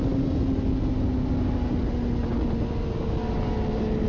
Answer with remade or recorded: recorded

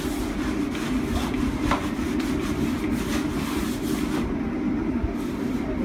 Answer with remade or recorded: recorded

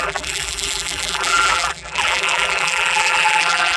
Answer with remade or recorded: remade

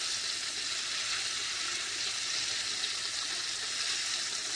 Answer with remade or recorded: recorded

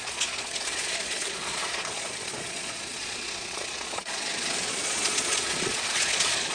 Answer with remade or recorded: remade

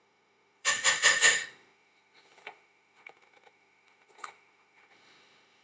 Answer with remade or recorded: remade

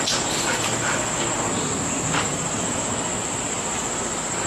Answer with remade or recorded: recorded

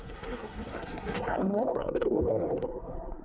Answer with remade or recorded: remade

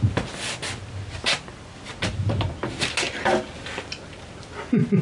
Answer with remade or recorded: recorded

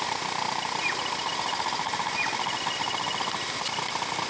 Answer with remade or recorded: recorded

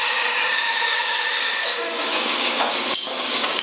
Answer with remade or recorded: remade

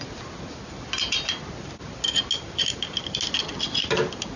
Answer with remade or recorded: recorded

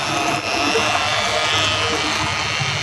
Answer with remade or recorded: recorded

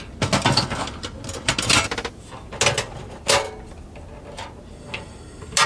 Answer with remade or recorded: recorded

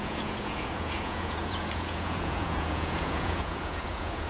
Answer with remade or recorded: remade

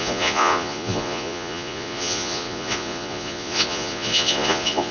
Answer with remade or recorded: remade